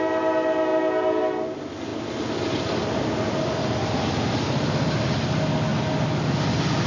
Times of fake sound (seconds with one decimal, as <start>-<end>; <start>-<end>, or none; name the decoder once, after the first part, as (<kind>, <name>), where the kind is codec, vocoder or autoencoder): none